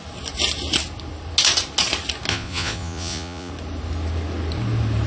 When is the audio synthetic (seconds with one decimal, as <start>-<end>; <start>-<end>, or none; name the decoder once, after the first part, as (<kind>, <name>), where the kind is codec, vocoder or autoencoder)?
2.3-3.5 (vocoder, Vocos)